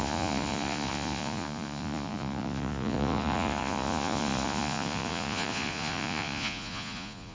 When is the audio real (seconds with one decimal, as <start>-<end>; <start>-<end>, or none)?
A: none